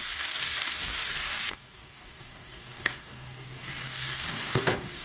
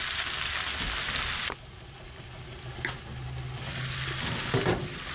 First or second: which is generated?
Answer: first